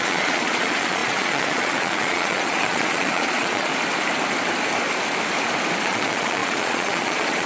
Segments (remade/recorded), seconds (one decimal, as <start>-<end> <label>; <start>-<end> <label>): 0.0-3.7 remade; 3.7-5.8 recorded; 5.8-7.5 remade